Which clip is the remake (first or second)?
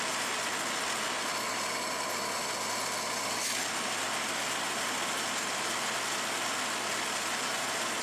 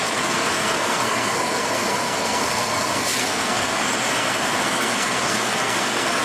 second